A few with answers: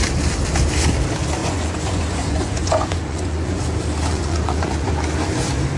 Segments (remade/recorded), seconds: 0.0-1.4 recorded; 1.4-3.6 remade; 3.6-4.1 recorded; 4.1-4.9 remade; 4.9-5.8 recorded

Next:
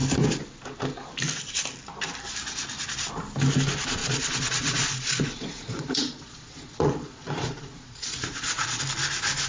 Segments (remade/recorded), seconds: 0.0-4.0 recorded; 4.0-8.8 remade; 8.8-9.5 recorded

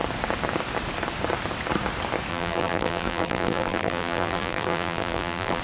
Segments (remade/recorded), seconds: 0.0-2.3 recorded; 2.3-5.6 remade